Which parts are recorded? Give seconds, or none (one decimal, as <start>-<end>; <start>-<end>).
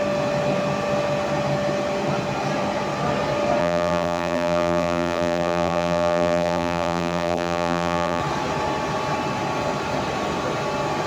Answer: 0.0-3.6; 8.2-11.1